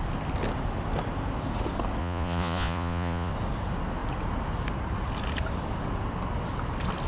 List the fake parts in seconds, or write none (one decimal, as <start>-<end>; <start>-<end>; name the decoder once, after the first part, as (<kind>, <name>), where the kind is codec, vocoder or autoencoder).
2.0-3.3 (vocoder, Vocos)